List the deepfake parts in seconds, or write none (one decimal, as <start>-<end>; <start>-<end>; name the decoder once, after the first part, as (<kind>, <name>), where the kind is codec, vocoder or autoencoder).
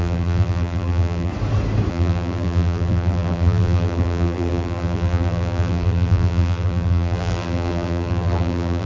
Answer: 0.0-1.3 (vocoder, BigVGAN v2); 1.9-8.9